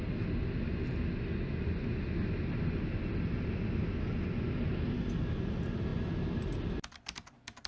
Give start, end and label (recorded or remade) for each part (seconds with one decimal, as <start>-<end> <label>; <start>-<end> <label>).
0.0-7.7 recorded